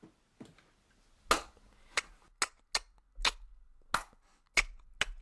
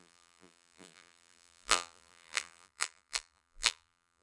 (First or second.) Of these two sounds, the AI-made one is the second